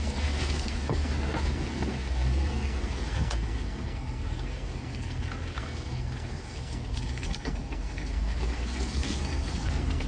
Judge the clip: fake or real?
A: fake